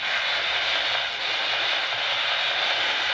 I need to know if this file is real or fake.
real